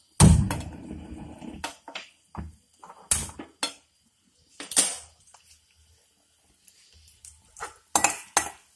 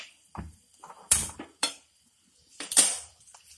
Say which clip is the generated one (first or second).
second